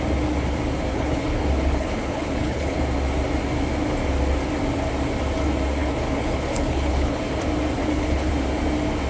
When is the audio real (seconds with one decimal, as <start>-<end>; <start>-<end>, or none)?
0.0-0.9; 2.8-5.8; 7.2-7.8; 8.3-9.1